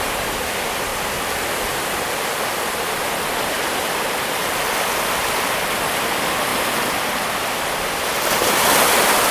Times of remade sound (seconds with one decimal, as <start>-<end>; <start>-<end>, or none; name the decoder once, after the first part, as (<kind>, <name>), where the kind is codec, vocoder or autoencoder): 0.0-0.9 (vocoder, BigVGAN v2); 3.4-9.3